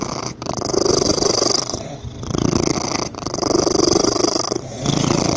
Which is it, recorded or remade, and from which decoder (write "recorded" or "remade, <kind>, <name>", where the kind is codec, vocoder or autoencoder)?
remade, vocoder, BigVGAN v2